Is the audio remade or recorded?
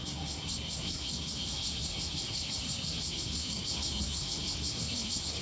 remade